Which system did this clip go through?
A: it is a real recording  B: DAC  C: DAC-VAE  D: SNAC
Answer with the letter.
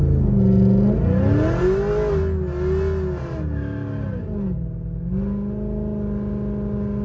A